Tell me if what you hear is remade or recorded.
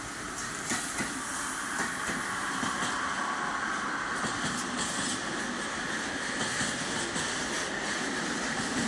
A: recorded